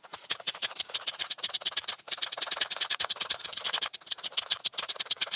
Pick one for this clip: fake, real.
fake